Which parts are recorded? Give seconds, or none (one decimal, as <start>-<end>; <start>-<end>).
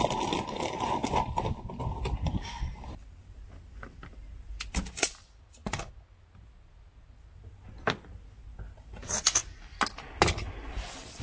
0.0-11.2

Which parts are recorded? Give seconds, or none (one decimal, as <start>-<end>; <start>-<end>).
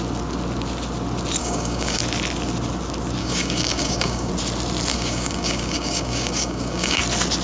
0.0-1.4; 2.0-3.2; 4.3-4.9; 7.0-7.4